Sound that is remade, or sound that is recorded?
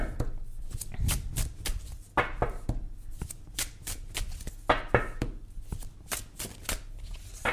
recorded